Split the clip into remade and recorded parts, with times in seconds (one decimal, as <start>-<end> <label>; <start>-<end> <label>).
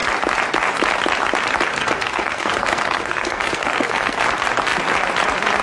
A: 0.0-1.7 recorded; 1.7-4.2 remade; 4.2-5.6 recorded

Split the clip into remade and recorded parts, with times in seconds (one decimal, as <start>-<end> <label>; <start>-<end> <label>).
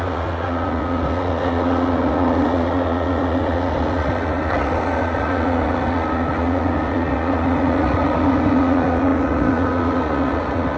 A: 0.0-10.8 remade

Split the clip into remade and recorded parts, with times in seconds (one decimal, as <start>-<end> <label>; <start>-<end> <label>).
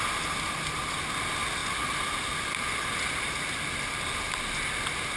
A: 0.0-5.2 recorded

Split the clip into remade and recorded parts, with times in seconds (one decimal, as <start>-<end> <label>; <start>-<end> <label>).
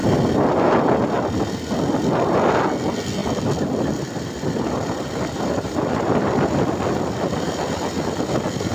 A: 0.0-8.7 recorded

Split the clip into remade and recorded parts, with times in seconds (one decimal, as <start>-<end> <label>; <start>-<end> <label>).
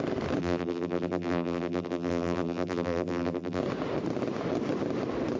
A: 0.0-0.4 recorded; 0.4-3.6 remade; 3.6-5.4 recorded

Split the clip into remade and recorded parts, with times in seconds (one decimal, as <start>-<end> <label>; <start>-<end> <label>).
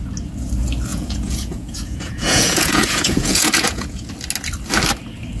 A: 0.0-0.9 recorded; 0.9-4.1 remade; 4.1-5.4 recorded